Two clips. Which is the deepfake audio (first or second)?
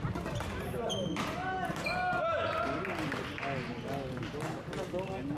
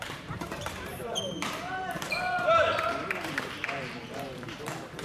second